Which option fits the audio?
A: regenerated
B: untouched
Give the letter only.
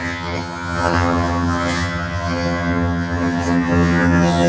A